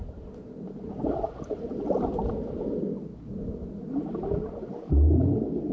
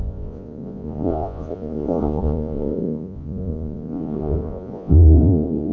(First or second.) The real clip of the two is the first